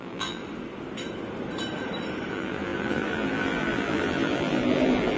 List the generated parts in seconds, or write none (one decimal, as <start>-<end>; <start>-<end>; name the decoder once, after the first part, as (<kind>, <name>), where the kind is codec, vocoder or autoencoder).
0.0-0.4 (vocoder, BigVGAN v2); 2.3-5.2